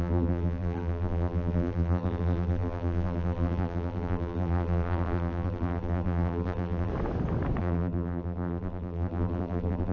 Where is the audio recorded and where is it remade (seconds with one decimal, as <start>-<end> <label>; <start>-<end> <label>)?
0.0-6.9 remade; 6.9-7.6 recorded; 7.6-9.9 remade